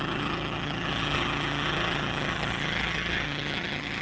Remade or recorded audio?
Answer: remade